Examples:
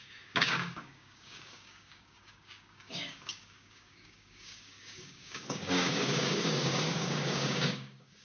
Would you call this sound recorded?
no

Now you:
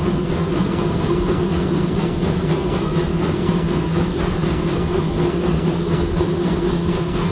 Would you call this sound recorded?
no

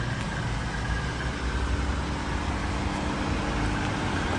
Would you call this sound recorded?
yes